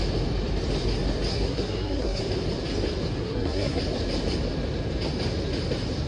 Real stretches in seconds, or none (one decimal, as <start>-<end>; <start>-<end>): 0.0-1.3; 2.2-3.2; 3.8-6.1